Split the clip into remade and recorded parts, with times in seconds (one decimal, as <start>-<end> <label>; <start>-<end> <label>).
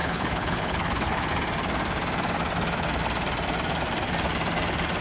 0.0-1.3 remade; 1.3-5.0 recorded